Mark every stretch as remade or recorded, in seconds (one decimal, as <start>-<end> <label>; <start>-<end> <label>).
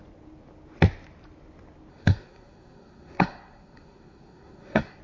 0.0-1.9 recorded; 1.9-5.0 remade